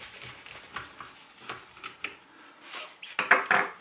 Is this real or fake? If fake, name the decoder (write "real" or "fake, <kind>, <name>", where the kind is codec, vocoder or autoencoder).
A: real